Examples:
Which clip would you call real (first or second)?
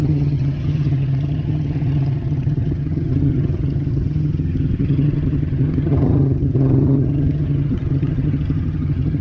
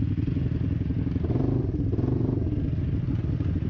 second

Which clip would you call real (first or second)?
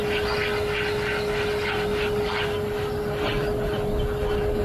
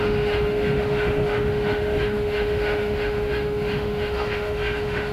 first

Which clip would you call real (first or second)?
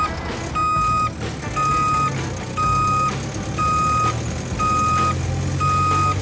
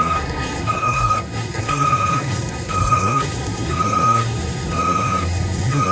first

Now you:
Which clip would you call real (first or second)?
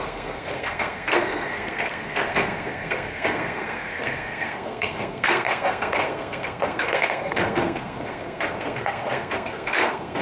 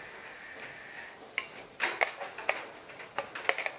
second